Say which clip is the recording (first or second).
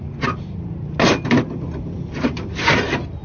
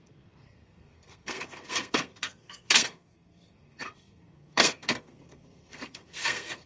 first